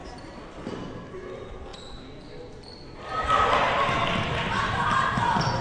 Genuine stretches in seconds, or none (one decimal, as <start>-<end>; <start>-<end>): 0.0-5.6

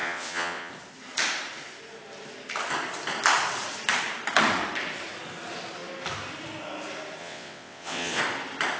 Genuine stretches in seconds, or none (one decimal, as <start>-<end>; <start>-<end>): 0.7-7.2; 8.2-8.8

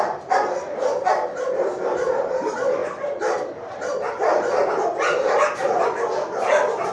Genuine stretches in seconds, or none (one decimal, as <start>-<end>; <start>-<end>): 0.0-6.9

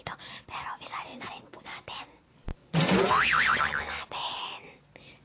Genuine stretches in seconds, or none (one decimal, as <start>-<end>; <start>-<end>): 0.0-1.1; 1.6-2.6; 3.6-5.2

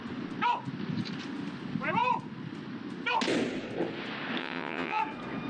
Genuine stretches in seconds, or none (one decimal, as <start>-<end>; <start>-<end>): 0.0-4.4; 5.0-5.5

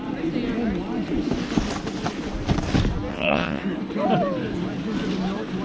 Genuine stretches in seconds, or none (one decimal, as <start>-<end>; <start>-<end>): 0.0-3.1; 3.6-5.6

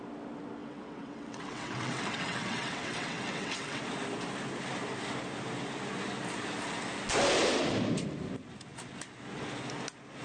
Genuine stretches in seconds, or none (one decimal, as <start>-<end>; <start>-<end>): 0.0-0.6; 3.8-10.2